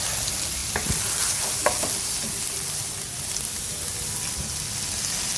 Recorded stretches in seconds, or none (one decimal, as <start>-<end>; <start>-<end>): 0.0-5.4